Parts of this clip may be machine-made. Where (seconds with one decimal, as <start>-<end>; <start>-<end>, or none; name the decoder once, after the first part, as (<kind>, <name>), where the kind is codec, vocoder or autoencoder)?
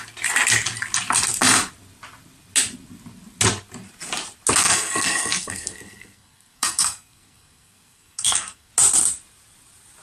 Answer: 4.6-8.7 (codec, SNAC)